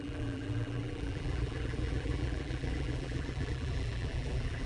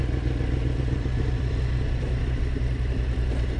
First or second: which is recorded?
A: second